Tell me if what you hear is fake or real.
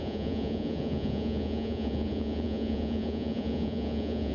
fake